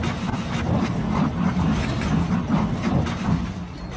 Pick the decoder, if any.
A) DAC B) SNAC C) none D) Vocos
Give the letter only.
C